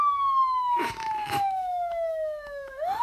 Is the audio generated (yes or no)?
yes